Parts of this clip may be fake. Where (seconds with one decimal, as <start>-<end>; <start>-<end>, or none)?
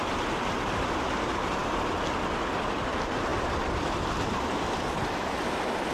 0.0-1.6; 2.9-5.9